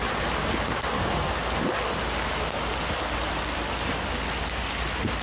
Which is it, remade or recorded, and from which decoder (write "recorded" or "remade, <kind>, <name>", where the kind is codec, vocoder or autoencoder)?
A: recorded